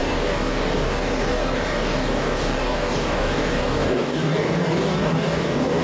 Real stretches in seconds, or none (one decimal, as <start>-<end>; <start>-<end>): none